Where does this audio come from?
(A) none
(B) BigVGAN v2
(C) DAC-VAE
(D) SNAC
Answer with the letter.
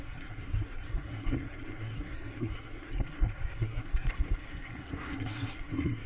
D